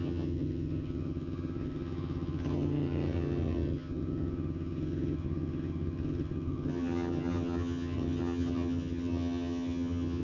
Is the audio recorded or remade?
remade